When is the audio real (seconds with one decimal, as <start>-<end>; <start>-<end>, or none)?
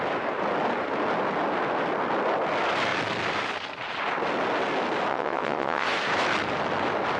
0.0-5.1; 5.9-7.2